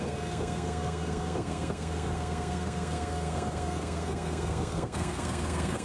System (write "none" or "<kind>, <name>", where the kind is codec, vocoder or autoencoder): codec, SNAC